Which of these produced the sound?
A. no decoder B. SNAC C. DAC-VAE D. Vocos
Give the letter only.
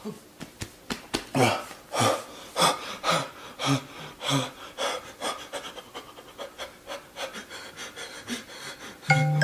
A